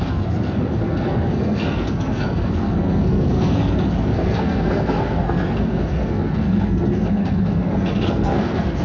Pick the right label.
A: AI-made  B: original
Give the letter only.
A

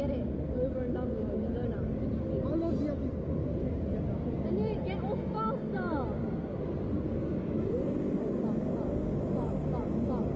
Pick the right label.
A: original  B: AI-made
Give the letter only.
A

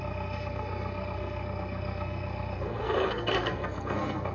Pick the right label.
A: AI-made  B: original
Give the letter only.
A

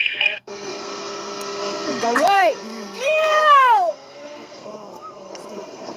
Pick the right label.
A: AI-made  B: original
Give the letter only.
A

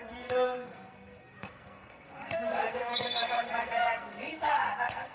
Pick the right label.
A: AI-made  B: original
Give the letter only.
A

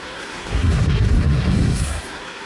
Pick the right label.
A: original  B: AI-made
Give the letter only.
B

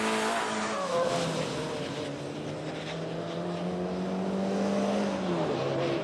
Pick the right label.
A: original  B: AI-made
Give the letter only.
A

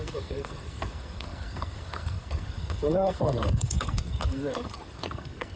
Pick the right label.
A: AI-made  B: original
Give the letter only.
A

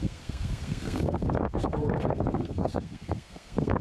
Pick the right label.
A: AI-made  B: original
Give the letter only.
A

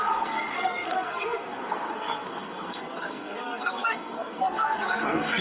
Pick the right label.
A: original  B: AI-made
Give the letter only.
B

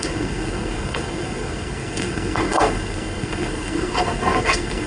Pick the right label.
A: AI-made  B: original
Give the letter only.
A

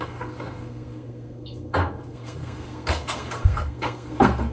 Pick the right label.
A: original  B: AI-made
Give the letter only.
B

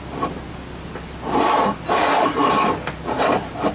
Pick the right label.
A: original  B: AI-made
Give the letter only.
A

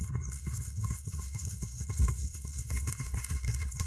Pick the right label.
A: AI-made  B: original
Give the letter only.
A